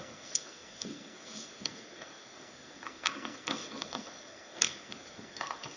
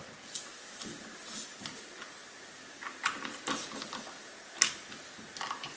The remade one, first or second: first